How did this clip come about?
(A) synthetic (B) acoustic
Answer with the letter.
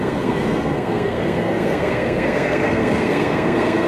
A